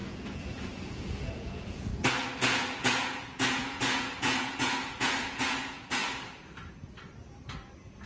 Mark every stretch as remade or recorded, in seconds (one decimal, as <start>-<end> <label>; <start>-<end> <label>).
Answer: 0.0-1.9 remade; 1.9-2.4 recorded; 2.4-6.0 remade; 6.0-8.1 recorded